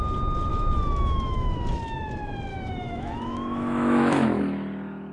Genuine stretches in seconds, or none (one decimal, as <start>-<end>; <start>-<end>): 0.0-0.5; 1.8-2.5; 4.4-5.1